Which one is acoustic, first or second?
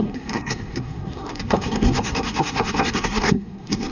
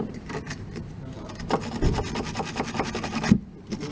second